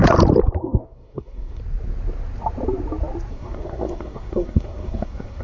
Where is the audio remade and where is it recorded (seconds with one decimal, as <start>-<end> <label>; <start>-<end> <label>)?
0.0-0.6 recorded; 0.6-1.6 remade; 1.6-3.3 recorded; 3.3-5.4 remade